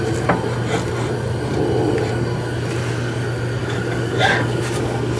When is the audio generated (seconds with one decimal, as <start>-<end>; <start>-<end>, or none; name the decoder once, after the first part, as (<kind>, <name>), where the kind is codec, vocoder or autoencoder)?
3.6-5.2 (codec, DAC)

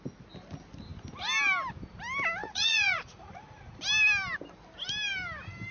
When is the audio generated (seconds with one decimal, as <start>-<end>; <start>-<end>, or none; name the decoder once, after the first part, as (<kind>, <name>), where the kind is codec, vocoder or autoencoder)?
2.4-3.8 (vocoder, Vocos)

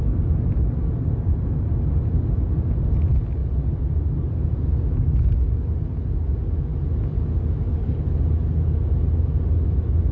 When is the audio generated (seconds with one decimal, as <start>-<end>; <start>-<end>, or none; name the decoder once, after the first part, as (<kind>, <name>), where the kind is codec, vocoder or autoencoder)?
7.7-8.2 (codec, HILCodec)

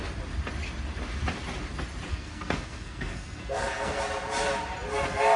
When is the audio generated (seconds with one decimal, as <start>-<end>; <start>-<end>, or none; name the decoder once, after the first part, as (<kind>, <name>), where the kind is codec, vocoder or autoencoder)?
2.1-4.0 (codec, SNAC)

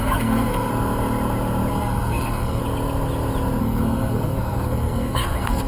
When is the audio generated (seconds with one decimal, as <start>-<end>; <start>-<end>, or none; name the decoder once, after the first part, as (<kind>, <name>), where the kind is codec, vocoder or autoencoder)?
0.0-0.7 (codec, SNAC); 1.7-2.6; 3.6-5.7

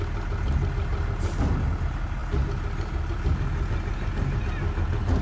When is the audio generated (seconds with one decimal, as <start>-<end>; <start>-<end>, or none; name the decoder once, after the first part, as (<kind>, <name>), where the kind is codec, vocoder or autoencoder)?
none

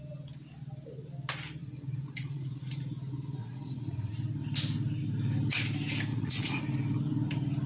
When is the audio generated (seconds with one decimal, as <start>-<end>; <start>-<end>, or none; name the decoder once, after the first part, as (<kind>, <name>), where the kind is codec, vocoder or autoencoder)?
1.6-2.8 (vocoder, Vocos); 3.4-4.1; 6.1-6.6